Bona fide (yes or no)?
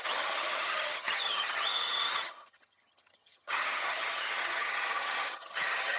no